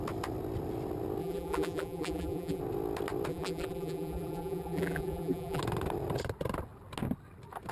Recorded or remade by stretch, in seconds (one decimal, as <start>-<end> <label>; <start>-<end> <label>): 0.0-1.2 recorded; 1.2-2.6 remade; 2.6-3.3 recorded; 3.3-5.6 remade; 5.6-7.7 recorded